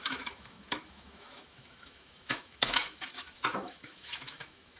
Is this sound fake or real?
fake